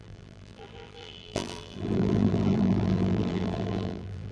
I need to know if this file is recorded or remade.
remade